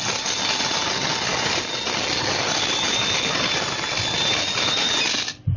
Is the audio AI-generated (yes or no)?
no